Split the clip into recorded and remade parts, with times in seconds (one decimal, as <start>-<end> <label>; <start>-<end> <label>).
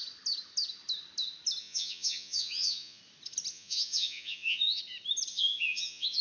0.0-1.6 recorded; 1.6-3.0 remade; 3.0-3.5 recorded; 3.5-4.8 remade; 4.8-5.3 recorded; 5.3-6.2 remade